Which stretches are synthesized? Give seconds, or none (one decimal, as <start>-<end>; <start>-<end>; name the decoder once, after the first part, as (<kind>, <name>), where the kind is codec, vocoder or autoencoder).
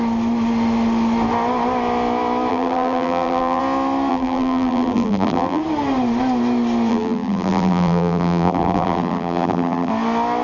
2.5-3.6 (vocoder, BigVGAN v2); 4.1-5.6; 6.9-9.9